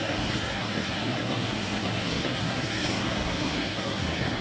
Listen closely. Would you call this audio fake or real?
fake